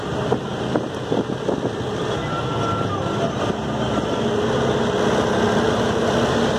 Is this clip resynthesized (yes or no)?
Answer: no